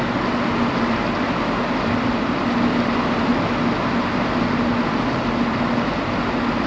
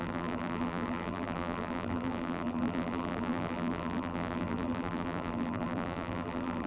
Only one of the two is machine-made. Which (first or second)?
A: second